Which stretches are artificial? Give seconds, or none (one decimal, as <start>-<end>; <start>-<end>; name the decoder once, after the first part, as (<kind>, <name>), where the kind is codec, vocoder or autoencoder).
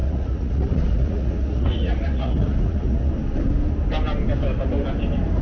0.0-3.1 (vocoder, Vocos)